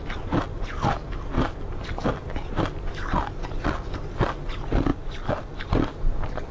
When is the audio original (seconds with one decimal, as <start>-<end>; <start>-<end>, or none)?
0.0-6.5